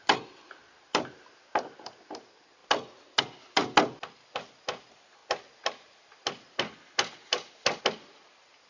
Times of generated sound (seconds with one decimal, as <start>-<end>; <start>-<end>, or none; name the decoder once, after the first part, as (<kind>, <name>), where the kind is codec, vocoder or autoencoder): none